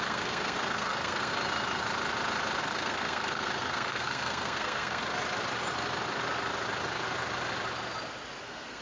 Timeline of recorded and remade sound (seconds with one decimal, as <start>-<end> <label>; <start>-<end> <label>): 0.0-1.3 remade; 1.3-2.6 recorded; 2.6-5.0 remade; 5.0-8.4 recorded; 8.4-8.8 remade